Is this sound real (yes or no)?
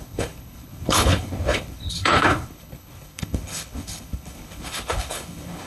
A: no